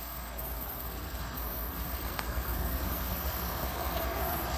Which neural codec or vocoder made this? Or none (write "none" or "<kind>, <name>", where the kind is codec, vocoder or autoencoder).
codec, SNAC